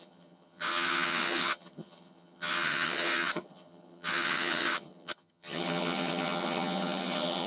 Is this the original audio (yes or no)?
no